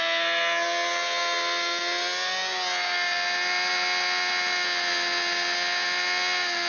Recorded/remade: recorded